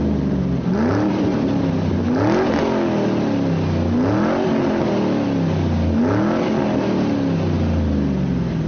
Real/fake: real